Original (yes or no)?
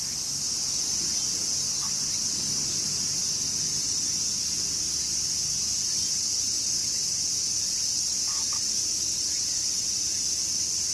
yes